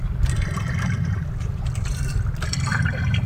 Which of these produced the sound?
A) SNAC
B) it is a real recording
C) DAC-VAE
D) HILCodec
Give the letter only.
B